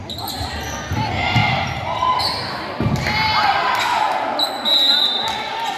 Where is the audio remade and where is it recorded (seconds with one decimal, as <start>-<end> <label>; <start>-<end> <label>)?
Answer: 0.0-1.4 recorded; 1.4-2.2 remade; 2.2-5.8 recorded